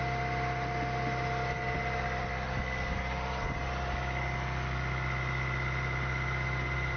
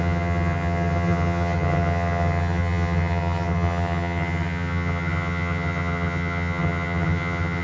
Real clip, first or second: first